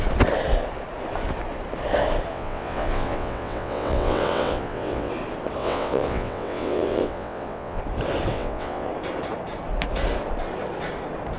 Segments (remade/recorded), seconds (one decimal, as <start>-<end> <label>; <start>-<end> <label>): 0.0-2.3 recorded; 2.3-5.1 remade; 5.1-5.6 recorded; 5.6-7.8 remade; 7.8-8.3 recorded; 8.3-8.9 remade; 8.9-11.4 recorded